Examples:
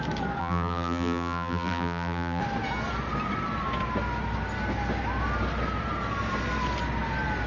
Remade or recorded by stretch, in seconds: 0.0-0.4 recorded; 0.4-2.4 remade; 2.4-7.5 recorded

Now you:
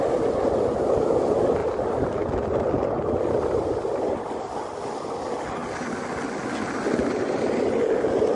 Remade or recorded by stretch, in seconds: 0.0-8.3 recorded